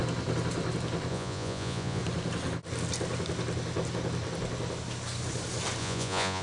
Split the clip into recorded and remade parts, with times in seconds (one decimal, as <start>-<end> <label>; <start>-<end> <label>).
0.0-1.1 recorded; 1.1-2.0 remade; 2.0-5.8 recorded; 5.8-6.4 remade